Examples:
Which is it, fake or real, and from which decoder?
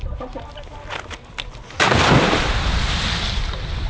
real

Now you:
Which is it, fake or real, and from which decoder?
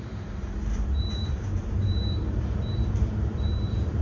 fake, vocoder, BigVGAN v2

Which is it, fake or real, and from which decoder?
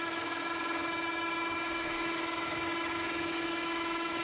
fake, autoencoder, DAC-VAE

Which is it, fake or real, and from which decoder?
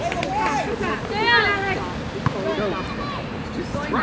real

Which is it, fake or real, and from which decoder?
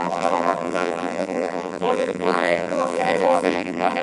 fake, vocoder, BigVGAN v2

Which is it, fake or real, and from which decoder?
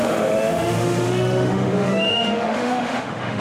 fake, autoencoder, DAC-VAE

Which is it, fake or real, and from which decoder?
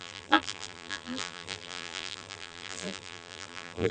fake, vocoder, BigVGAN v2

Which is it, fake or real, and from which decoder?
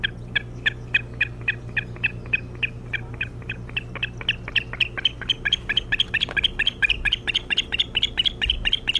real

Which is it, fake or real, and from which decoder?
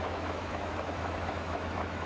fake, autoencoder, DAC-VAE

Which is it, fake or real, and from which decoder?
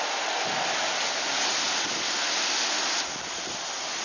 real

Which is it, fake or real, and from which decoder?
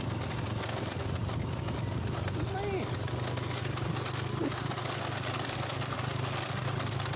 real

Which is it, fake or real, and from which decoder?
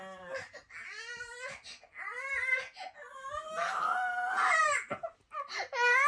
real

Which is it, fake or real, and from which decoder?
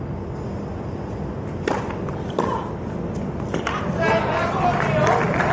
real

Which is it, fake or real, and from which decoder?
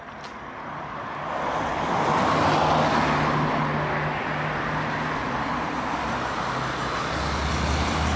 real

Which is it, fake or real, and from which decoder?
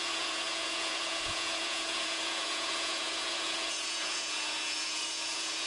fake, vocoder, Vocos